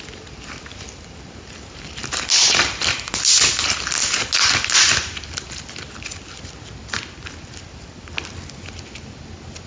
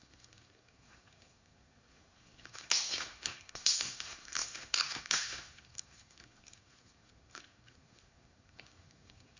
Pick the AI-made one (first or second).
second